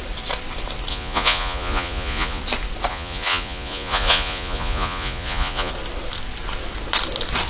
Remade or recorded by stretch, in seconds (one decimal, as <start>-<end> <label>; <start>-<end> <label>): 0.0-0.9 recorded; 0.9-2.4 remade; 2.4-2.9 recorded; 2.9-5.7 remade; 5.7-7.5 recorded